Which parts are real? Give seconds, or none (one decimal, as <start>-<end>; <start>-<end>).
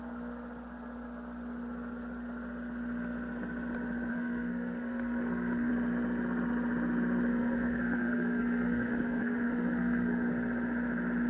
0.0-4.1; 5.7-7.3; 10.3-11.3